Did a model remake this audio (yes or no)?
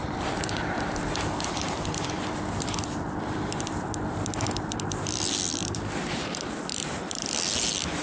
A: yes